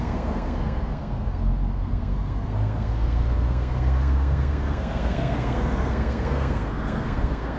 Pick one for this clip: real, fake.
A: fake